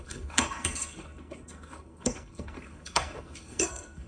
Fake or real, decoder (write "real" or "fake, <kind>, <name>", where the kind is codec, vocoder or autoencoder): fake, codec, SNAC